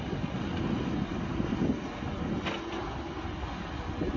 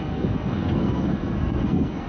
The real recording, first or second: first